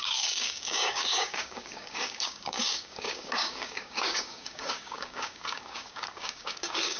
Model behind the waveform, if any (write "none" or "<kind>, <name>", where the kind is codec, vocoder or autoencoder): codec, DAC